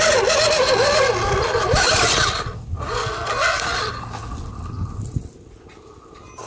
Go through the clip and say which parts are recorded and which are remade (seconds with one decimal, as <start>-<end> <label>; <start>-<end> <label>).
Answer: 0.0-3.0 recorded; 3.0-3.6 remade; 3.6-6.5 recorded